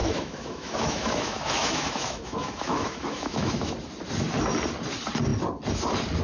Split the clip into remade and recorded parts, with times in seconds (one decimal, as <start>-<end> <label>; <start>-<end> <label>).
0.0-3.7 remade; 3.7-6.2 recorded

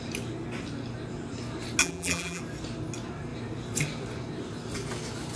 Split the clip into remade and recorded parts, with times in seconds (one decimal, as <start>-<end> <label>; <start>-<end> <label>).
0.0-1.8 recorded; 1.8-2.4 remade; 2.4-5.4 recorded

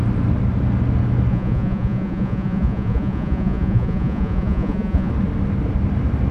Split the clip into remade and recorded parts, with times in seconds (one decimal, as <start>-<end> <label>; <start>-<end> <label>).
0.0-1.3 recorded; 1.3-5.1 remade; 5.1-6.3 recorded

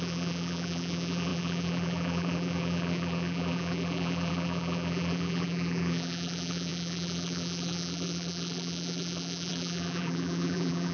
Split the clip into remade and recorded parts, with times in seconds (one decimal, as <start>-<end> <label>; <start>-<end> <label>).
0.0-10.9 remade

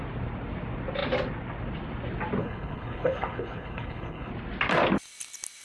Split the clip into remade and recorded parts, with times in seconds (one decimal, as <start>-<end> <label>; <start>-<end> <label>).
0.0-2.4 recorded; 2.4-4.3 remade; 4.3-5.6 recorded

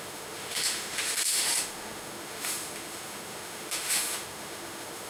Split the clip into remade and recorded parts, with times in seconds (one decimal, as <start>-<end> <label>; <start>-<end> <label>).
0.0-5.1 remade